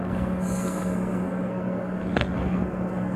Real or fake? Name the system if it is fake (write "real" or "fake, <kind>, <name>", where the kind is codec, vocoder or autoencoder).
fake, codec, SNAC